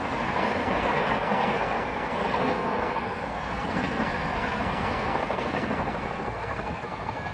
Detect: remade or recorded remade